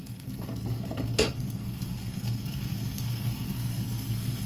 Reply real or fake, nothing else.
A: fake